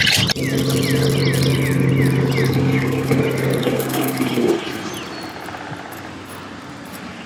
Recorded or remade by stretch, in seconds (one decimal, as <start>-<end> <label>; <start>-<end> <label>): 0.0-2.5 recorded; 2.5-3.2 remade; 3.2-3.6 recorded; 3.6-4.9 remade; 4.9-7.3 recorded